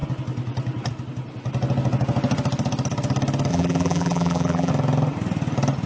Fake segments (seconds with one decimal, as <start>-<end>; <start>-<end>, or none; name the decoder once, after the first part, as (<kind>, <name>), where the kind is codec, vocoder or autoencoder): 3.5-4.7 (vocoder, BigVGAN v2)